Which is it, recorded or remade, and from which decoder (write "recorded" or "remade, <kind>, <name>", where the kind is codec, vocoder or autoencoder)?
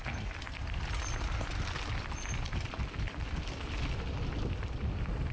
recorded